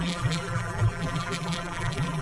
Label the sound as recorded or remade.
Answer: remade